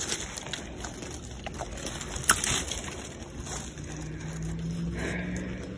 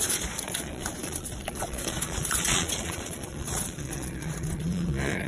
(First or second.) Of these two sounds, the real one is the first